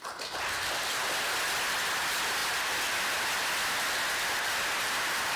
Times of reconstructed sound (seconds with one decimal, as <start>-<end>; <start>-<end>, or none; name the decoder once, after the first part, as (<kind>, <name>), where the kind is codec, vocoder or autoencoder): none